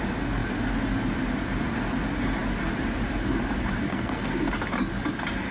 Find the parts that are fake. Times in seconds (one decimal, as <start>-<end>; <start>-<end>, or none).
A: 3.9-4.5